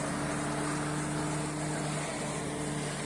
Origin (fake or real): real